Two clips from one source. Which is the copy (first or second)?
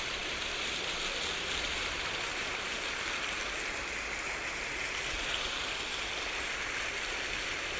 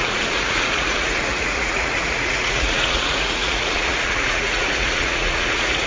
second